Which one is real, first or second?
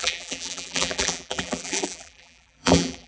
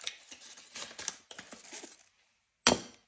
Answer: second